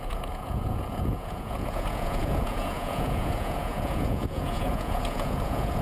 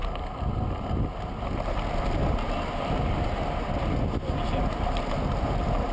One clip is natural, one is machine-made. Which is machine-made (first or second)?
first